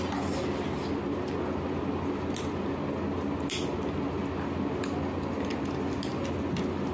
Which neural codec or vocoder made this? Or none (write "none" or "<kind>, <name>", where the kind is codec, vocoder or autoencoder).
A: none